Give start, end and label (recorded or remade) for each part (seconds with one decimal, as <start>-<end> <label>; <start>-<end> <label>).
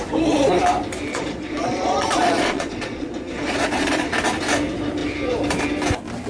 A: 0.0-1.1 recorded; 1.1-4.1 remade; 4.1-6.3 recorded